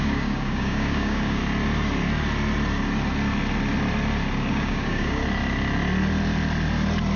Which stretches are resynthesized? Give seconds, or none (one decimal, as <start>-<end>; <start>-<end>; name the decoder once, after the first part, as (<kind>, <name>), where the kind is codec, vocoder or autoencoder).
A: 0.0-1.4 (codec, DAC); 4.5-5.2